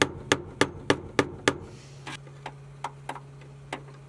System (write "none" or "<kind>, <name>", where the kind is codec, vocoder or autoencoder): none